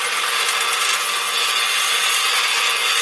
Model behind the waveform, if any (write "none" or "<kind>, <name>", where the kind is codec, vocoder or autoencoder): none